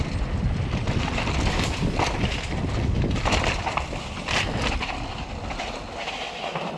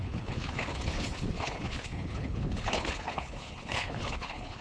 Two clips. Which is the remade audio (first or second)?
second